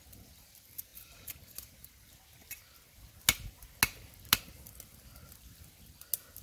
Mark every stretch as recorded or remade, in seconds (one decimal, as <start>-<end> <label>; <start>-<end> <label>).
0.0-6.4 recorded